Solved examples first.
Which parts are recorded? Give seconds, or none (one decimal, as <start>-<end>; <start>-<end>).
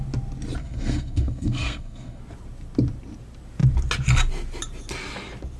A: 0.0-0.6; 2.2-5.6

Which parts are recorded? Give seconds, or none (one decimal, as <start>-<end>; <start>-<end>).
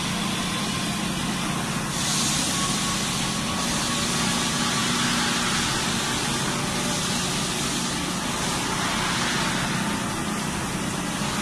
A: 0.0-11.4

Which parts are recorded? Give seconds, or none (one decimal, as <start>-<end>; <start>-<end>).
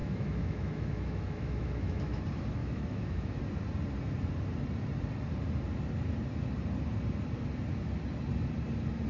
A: 2.2-2.6; 3.4-9.1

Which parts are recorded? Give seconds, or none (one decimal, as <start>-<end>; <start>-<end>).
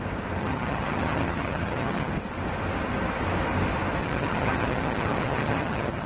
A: 0.0-0.4; 2.1-4.0